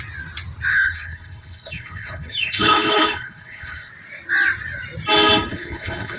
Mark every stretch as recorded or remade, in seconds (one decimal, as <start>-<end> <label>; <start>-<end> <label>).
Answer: 0.0-0.7 recorded; 0.7-3.9 remade; 3.9-5.5 recorded; 5.5-6.2 remade